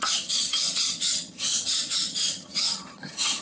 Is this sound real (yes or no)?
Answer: no